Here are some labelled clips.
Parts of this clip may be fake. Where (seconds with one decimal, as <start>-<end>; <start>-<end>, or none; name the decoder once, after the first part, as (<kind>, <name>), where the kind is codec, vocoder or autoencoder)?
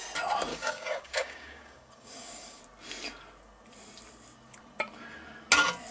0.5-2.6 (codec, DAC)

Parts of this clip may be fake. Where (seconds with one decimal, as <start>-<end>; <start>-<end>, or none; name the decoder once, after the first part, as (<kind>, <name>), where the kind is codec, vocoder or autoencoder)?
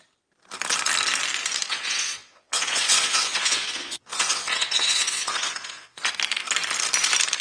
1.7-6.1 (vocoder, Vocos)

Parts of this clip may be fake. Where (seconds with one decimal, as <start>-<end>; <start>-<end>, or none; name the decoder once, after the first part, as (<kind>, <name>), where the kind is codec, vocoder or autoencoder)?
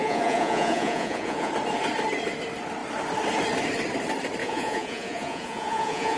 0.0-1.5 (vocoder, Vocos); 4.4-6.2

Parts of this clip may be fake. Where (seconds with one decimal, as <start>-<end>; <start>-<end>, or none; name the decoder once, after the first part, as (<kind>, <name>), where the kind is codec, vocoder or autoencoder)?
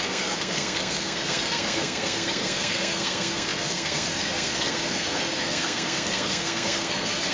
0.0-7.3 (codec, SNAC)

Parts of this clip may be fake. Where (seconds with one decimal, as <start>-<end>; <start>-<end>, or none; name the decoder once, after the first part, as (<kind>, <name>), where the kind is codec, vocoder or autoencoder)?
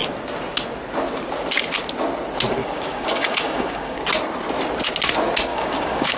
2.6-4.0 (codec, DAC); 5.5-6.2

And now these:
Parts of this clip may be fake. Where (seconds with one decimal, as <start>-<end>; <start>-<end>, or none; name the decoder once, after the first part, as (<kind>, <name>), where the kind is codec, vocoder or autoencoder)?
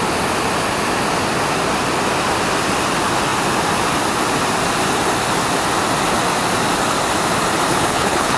7.7-8.4 (codec, HILCodec)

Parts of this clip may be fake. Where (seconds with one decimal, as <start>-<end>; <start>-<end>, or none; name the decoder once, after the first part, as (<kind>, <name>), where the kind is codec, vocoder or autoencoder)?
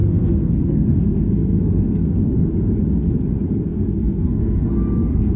0.0-2.5 (codec, SNAC); 3.7-5.4